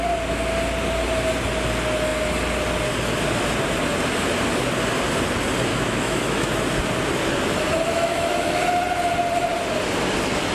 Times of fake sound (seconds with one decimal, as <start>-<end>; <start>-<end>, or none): 5.7-6.5; 7.9-8.6